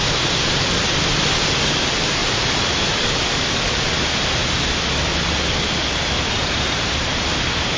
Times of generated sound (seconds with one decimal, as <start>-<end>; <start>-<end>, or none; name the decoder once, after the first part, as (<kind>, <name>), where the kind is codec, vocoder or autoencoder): none